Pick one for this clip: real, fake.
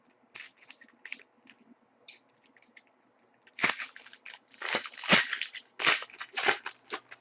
real